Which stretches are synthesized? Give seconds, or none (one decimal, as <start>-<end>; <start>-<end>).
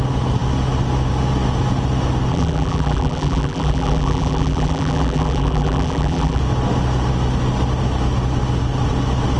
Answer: 2.3-6.4